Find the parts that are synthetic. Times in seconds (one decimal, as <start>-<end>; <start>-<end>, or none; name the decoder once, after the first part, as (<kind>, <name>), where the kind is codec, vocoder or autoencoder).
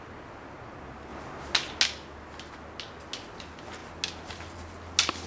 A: none